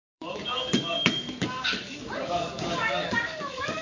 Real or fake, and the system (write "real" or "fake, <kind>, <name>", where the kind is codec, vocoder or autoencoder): fake, codec, DAC